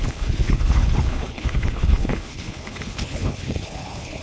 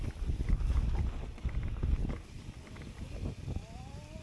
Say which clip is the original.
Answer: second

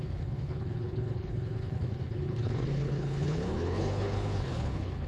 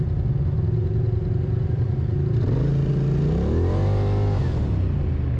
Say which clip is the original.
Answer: second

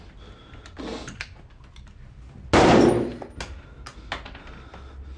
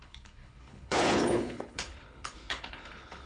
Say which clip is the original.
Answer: first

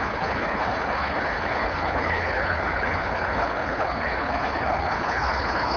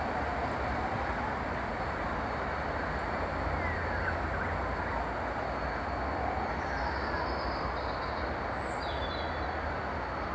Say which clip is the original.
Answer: second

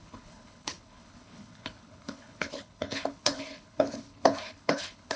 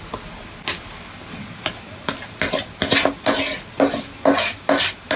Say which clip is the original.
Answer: second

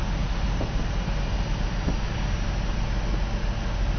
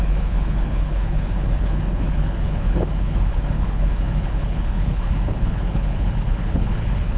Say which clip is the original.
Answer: first